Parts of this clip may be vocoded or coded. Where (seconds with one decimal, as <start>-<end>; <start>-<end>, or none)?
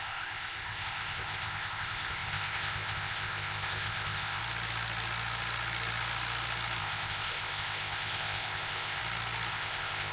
0.0-4.4; 6.8-9.0; 9.5-10.1